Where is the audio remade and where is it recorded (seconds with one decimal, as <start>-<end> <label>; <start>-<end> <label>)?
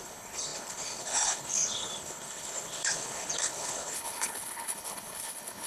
0.0-5.7 remade